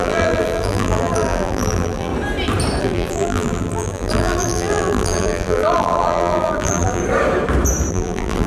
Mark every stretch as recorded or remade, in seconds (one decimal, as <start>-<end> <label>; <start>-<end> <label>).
0.0-2.1 remade; 2.1-2.8 recorded; 2.8-7.0 remade; 7.0-7.9 recorded; 7.9-8.5 remade